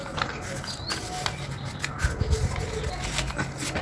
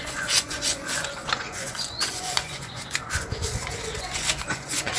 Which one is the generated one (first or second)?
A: second